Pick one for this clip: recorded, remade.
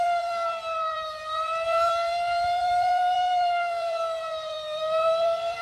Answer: remade